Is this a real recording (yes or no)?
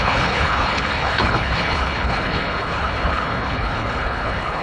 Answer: no